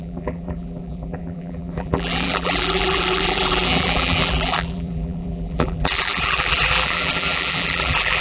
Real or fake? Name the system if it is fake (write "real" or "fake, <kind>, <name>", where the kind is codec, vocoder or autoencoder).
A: fake, vocoder, BigVGAN v2